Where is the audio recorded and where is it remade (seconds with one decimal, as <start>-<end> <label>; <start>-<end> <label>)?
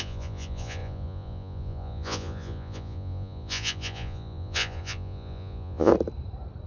0.0-5.9 remade; 5.9-6.7 recorded